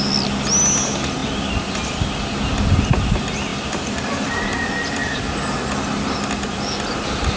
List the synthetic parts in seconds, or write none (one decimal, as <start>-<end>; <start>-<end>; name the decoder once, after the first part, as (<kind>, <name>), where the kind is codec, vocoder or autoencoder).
1.2-1.7 (vocoder, BigVGAN v2); 3.5-4.4